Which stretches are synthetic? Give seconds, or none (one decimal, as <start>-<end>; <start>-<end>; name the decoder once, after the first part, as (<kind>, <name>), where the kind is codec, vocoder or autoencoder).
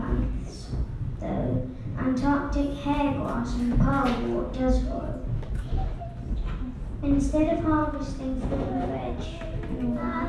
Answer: none